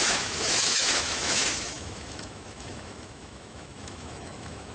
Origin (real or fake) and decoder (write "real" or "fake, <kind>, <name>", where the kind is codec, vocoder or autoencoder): fake, autoencoder, DAC-VAE